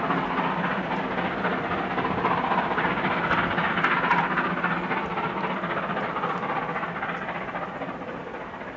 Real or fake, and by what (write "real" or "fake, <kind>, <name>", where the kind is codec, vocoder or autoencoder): real